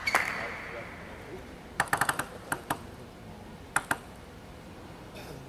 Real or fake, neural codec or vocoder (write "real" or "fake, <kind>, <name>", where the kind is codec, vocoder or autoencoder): fake, vocoder, BigVGAN v2